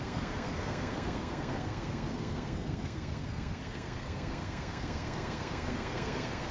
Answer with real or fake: fake